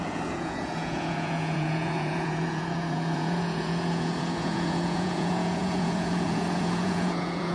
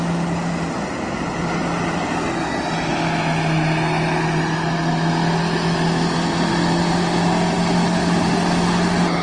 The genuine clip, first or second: second